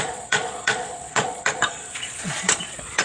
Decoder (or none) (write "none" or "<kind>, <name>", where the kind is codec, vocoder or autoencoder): vocoder, Vocos